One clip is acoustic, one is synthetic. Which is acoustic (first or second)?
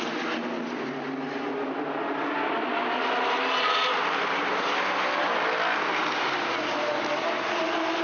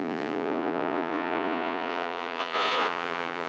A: first